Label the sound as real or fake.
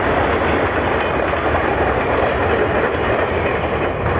real